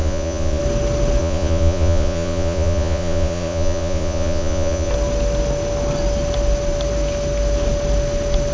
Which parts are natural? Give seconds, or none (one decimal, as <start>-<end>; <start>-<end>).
0.6-1.2; 4.9-8.5